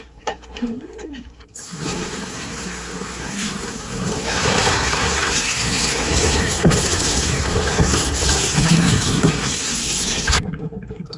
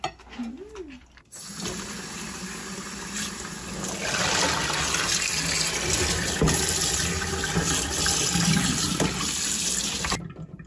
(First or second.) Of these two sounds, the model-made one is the first